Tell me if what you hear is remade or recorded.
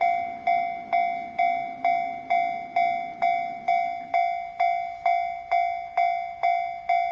recorded